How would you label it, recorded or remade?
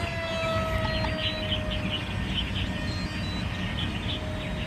recorded